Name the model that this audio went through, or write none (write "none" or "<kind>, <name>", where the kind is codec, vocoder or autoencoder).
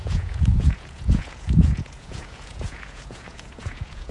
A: vocoder, Vocos